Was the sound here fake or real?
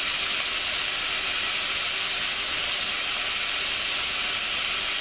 real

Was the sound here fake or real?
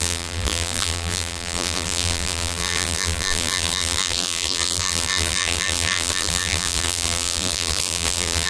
fake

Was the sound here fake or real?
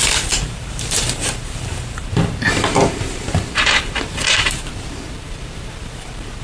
fake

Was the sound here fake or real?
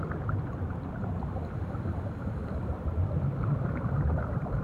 fake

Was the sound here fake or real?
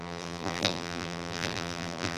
fake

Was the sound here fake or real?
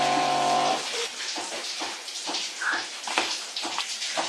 fake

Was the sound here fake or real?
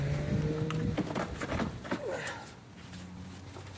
fake